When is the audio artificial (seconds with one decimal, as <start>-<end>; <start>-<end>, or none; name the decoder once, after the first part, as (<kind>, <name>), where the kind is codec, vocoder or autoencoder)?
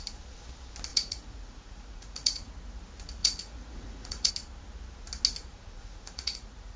0.9-2.5 (vocoder, Vocos); 3.2-4.3; 5.5-6.8